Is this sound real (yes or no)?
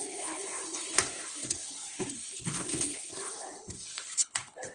no